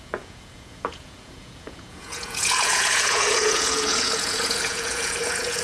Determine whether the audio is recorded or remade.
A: remade